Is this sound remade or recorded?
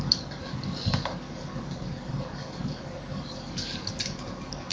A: remade